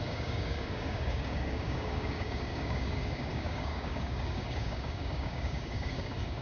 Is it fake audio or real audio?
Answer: fake